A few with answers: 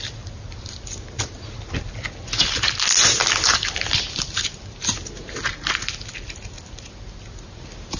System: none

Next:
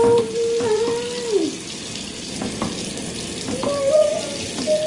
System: vocoder, BigVGAN v2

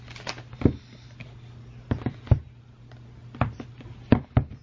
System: none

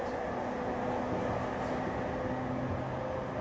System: none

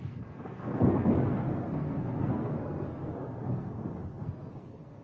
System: codec, SNAC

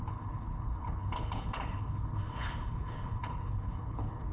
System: codec, HILCodec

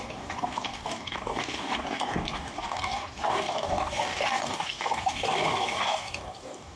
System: codec, DAC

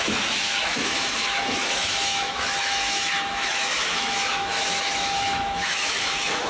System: autoencoder, DAC-VAE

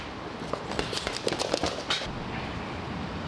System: vocoder, BigVGAN v2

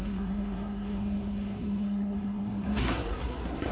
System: codec, SNAC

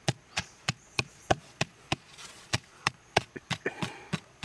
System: vocoder, Vocos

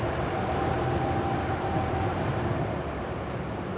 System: vocoder, BigVGAN v2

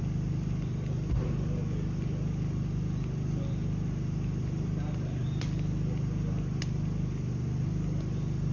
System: none